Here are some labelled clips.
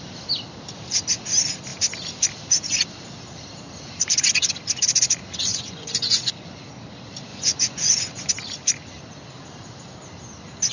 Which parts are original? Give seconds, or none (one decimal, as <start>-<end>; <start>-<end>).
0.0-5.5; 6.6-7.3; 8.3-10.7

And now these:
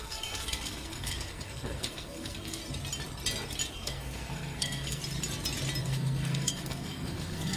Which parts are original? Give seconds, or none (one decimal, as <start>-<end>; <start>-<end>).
2.6-3.7; 5.0-5.8

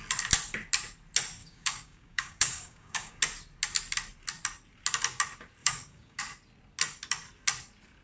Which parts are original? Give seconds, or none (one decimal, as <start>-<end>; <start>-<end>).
0.0-1.4; 3.2-5.6; 6.2-8.0